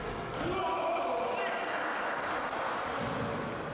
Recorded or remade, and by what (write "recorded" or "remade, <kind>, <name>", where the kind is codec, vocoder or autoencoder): recorded